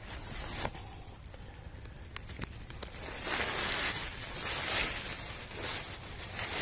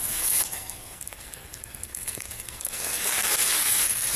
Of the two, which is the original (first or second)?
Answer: first